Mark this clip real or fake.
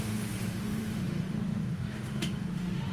fake